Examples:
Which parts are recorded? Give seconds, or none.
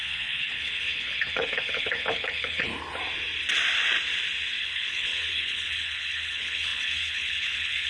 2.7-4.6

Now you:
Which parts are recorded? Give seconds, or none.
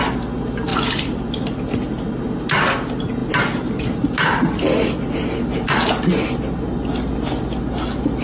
0.0-0.7; 1.4-8.2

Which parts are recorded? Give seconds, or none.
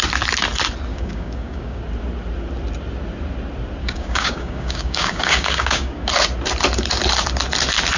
0.0-0.9; 1.8-3.8; 6.1-8.0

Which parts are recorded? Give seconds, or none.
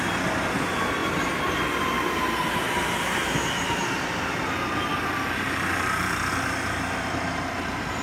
0.0-8.0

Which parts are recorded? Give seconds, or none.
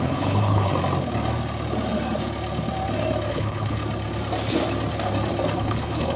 0.7-3.3; 3.8-5.6